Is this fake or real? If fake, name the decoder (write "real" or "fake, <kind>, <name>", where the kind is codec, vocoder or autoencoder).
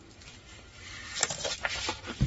real